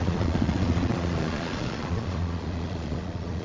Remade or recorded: remade